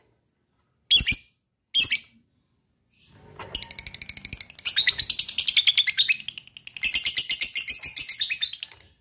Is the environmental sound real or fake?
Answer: real